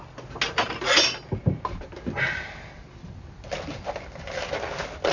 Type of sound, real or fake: real